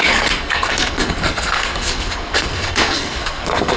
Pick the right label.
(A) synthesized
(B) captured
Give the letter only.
A